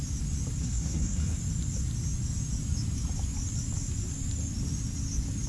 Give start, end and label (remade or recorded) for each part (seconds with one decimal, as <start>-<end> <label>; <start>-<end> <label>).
0.0-0.6 recorded; 0.6-1.4 remade; 1.4-5.5 recorded

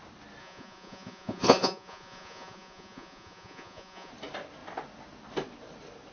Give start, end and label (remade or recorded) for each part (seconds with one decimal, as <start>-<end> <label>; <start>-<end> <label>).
0.0-0.4 recorded; 0.4-4.1 remade; 4.1-6.1 recorded